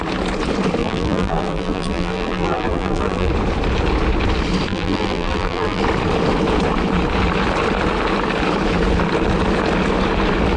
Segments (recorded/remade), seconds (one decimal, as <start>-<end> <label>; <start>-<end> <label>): 0.0-0.8 recorded; 0.8-3.3 remade; 3.3-4.7 recorded; 4.7-5.8 remade; 5.8-10.6 recorded